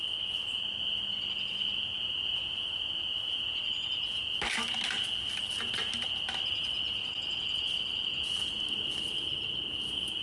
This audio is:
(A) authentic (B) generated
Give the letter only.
A